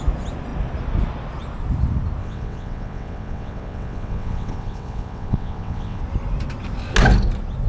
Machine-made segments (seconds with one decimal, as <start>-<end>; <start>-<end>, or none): 2.2-6.0